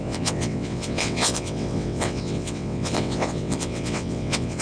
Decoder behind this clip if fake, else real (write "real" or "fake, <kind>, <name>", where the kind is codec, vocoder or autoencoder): fake, vocoder, WaveNeXt